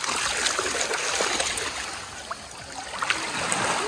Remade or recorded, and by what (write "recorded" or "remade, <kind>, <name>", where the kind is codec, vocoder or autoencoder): recorded